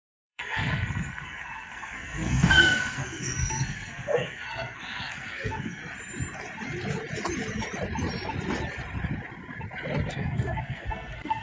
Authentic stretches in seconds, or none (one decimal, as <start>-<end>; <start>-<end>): 5.8-10.1